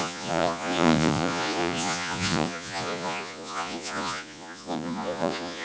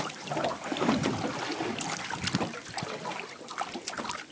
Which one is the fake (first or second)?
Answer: first